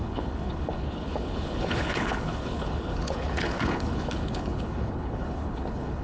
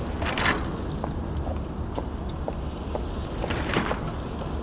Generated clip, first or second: first